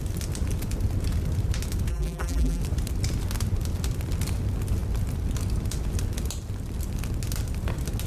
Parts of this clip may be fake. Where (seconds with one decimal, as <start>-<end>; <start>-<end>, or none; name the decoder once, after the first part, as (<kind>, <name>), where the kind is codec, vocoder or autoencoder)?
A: 1.9-2.6 (vocoder, BigVGAN v2)